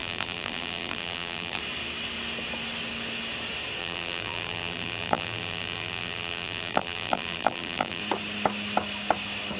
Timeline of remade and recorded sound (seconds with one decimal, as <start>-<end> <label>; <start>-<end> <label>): 0.0-1.6 remade; 1.6-3.8 recorded; 3.8-8.0 remade; 8.0-9.6 recorded

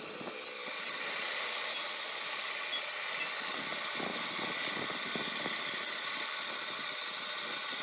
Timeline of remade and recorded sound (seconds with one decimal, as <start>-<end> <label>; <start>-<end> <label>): 0.0-0.6 recorded; 0.6-1.9 remade; 1.9-7.8 recorded

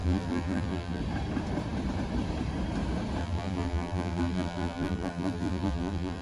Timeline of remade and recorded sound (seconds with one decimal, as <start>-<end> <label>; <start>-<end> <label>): 0.0-1.0 remade; 1.0-3.2 recorded; 3.2-6.2 remade

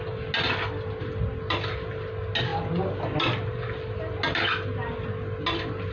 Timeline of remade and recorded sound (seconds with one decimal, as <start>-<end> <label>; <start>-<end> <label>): 0.0-1.0 recorded; 1.0-2.1 remade; 2.1-5.9 recorded

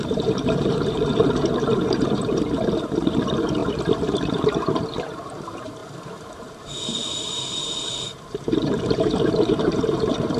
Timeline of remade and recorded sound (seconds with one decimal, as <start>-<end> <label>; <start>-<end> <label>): 0.0-5.8 remade; 5.8-6.3 recorded; 6.3-10.4 remade

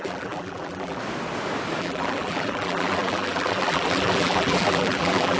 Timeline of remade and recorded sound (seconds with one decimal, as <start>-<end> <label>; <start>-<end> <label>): 0.0-1.0 remade; 1.0-1.8 recorded; 1.8-5.4 remade